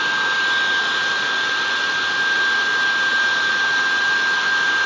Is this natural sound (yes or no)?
yes